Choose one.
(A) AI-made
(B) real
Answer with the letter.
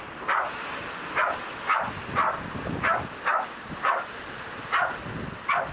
B